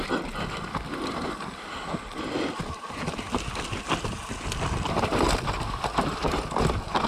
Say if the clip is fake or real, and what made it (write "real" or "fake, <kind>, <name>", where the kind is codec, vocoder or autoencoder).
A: real